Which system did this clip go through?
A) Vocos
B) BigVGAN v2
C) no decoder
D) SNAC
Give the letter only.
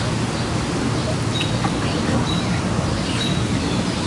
C